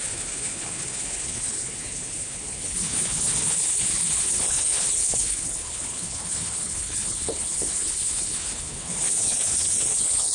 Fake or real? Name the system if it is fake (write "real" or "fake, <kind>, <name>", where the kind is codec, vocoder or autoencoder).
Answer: fake, codec, HILCodec